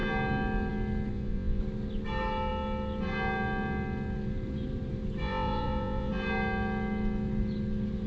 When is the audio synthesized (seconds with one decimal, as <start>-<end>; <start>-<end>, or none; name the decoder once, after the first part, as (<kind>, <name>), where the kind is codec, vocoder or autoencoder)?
1.1-1.6 (vocoder, Vocos); 5.2-6.1